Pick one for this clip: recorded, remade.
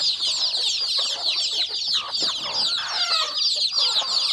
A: recorded